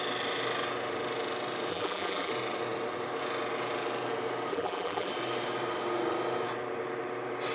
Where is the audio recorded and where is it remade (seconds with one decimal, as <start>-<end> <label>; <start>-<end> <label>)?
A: 0.0-1.7 recorded; 1.7-2.3 remade; 2.3-4.5 recorded; 4.5-5.1 remade; 5.1-7.5 recorded

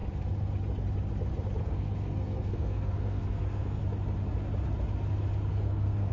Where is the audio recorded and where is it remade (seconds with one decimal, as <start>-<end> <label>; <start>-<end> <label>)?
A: 0.0-1.6 recorded; 1.6-3.8 remade; 3.8-5.5 recorded; 5.5-6.1 remade

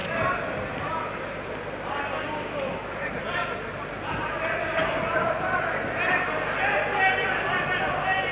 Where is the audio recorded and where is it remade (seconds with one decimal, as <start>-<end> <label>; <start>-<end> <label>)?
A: 0.0-8.3 recorded

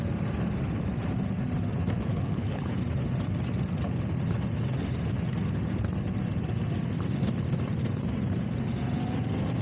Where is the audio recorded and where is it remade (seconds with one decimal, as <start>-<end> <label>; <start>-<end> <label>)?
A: 0.0-2.1 recorded; 2.1-2.8 remade; 2.8-9.6 recorded

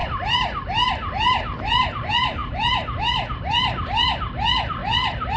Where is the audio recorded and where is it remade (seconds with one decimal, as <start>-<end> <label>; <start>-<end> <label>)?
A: 0.0-0.6 remade; 0.6-1.0 recorded; 1.0-1.9 remade; 1.9-5.4 recorded

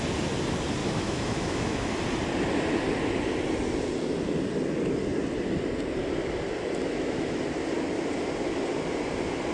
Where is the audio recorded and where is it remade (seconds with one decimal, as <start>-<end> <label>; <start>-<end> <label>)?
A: 0.0-0.8 recorded; 0.8-1.9 remade; 1.9-6.8 recorded; 6.8-7.4 remade; 7.4-9.5 recorded

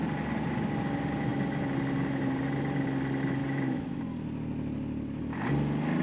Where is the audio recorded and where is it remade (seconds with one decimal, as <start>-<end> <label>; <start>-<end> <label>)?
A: 0.0-3.4 recorded; 3.4-4.0 remade; 4.0-6.0 recorded